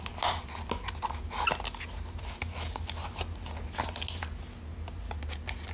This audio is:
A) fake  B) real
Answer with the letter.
B